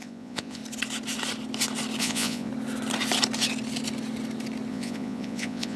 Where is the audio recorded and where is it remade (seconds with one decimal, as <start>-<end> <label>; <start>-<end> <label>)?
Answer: 0.0-0.6 remade; 0.6-2.0 recorded; 2.0-2.5 remade; 2.5-4.7 recorded; 4.7-5.8 remade